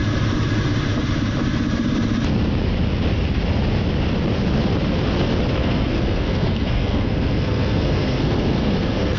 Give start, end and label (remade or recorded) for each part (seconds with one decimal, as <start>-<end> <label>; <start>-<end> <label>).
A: 0.0-5.6 recorded; 5.6-9.2 remade